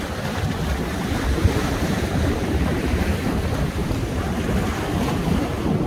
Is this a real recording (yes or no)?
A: no